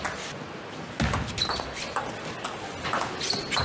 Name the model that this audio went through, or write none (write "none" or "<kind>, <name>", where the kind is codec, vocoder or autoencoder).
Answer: none